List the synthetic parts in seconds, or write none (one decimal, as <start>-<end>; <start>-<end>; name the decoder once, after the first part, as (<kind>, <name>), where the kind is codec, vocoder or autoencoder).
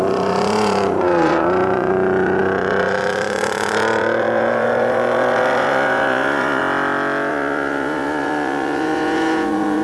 0.0-6.6 (vocoder, Vocos); 7.3-9.8